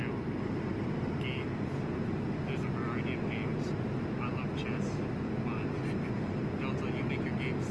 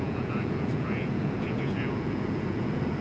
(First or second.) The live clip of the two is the first